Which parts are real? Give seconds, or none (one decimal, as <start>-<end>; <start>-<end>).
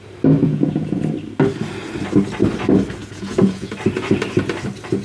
0.0-0.4; 1.0-3.0; 3.7-5.0